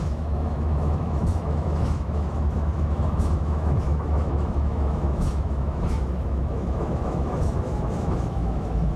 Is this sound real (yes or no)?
no